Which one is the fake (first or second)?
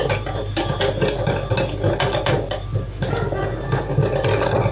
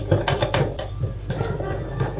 second